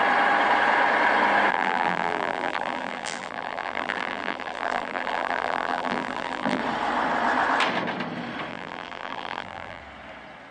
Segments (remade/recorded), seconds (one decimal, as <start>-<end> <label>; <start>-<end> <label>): 0.0-1.5 recorded; 1.5-6.6 remade; 6.6-8.5 recorded; 8.5-9.8 remade; 9.8-10.5 recorded